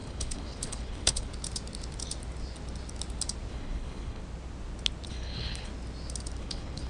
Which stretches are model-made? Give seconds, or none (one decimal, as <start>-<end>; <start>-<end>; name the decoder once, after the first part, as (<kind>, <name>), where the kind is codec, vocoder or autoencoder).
0.0-1.3 (codec, HILCodec); 3.5-4.2; 5.1-5.7; 6.4-6.9

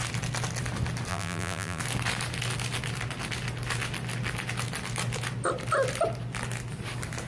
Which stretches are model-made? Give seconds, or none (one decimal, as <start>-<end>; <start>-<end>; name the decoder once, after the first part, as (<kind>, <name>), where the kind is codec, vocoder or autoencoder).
1.1-1.8 (vocoder, BigVGAN v2)